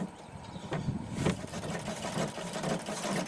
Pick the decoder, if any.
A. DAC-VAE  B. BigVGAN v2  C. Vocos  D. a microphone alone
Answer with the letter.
D